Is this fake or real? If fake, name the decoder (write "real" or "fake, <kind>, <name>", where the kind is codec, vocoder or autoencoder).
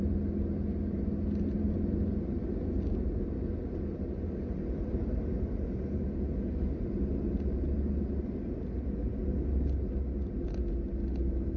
real